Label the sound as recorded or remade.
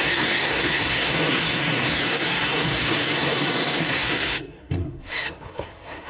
remade